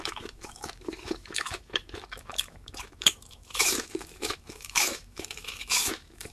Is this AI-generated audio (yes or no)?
yes